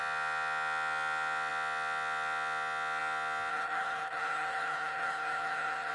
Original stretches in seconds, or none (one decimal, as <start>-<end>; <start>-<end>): 0.0-3.5